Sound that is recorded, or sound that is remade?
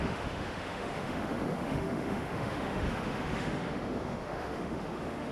remade